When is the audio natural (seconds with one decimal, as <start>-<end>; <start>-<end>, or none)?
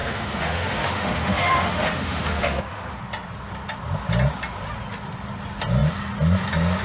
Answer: 3.0-6.8